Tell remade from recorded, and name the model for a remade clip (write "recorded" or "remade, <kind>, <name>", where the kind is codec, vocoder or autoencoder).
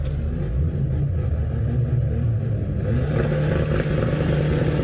recorded